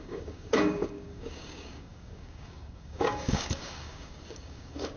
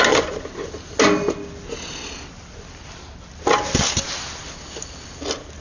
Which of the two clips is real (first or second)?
second